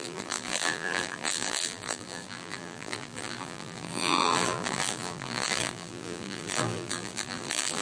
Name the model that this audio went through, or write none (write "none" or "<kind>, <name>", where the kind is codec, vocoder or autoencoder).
vocoder, BigVGAN v2